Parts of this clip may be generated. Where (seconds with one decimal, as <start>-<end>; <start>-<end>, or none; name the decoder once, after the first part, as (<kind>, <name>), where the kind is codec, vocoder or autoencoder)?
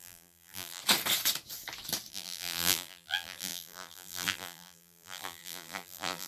0.0-0.8 (vocoder, BigVGAN v2); 2.1-6.3